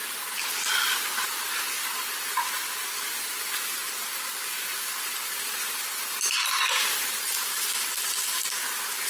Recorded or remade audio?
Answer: recorded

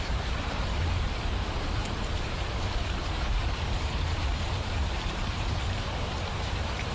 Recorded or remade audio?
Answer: remade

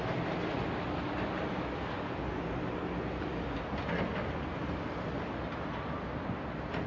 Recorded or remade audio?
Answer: recorded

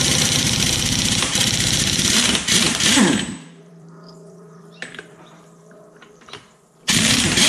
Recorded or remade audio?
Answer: remade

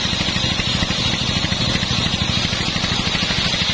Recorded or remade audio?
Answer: recorded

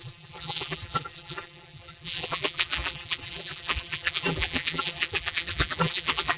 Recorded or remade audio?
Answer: remade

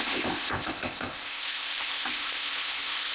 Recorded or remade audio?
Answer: remade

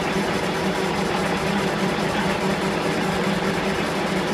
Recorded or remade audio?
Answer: recorded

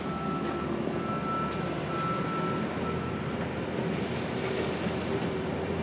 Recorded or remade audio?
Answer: recorded